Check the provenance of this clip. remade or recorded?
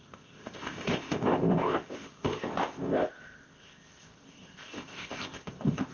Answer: remade